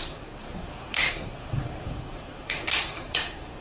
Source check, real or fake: fake